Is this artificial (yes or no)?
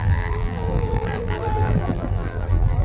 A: yes